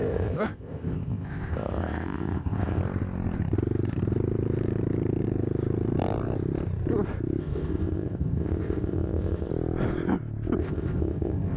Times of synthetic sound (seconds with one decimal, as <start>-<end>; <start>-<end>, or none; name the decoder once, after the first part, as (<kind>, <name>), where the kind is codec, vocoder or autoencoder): 0.0-2.8 (codec, ZipCodec); 7.4-9.5; 10.6-11.6

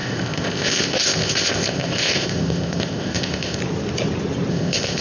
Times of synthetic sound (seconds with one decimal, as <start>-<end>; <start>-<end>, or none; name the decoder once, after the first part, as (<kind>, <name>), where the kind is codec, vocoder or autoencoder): 0.0-3.6 (codec, ZipCodec); 4.5-5.0